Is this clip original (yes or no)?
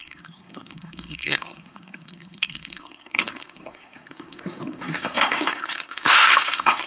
no